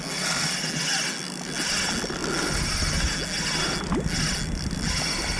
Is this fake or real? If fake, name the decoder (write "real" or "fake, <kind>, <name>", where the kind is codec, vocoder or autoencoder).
real